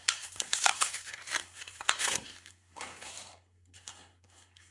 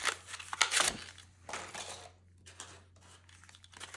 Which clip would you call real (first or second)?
second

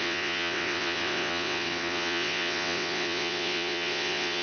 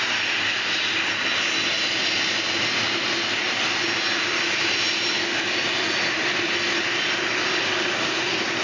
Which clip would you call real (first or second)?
second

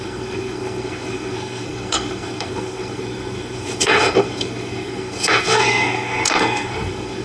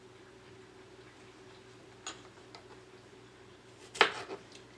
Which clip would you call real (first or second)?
second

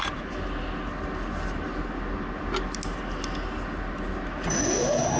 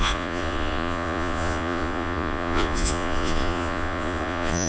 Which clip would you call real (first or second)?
first